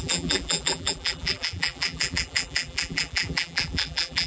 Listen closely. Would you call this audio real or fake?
fake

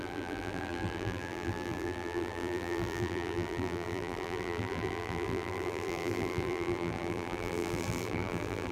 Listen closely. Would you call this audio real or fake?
fake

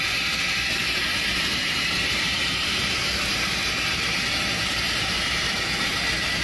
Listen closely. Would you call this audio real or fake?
fake